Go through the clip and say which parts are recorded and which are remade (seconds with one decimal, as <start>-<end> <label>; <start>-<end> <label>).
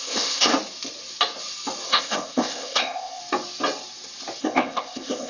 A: 0.0-0.5 remade; 0.5-1.9 recorded; 1.9-3.2 remade; 3.2-4.4 recorded; 4.4-5.3 remade